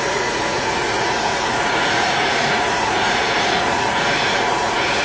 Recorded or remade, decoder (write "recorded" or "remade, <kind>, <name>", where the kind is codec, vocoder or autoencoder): remade, vocoder, Vocos